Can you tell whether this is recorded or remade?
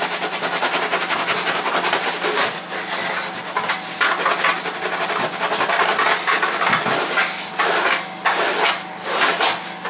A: recorded